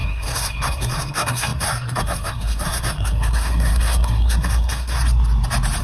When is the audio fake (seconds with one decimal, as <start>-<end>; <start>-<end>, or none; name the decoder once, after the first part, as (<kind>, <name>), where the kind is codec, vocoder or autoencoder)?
0.0-5.0 (codec, SNAC)